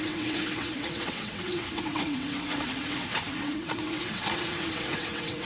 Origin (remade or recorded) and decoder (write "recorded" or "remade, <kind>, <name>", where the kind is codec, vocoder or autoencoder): remade, vocoder, WaveNeXt